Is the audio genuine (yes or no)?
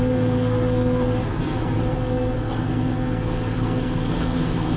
no